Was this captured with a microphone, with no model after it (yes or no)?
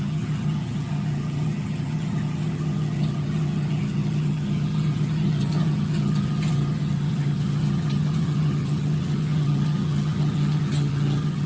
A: no